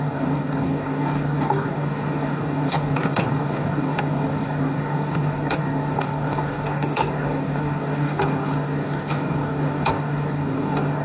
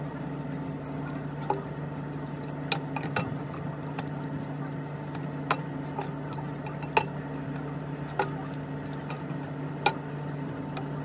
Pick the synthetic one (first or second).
first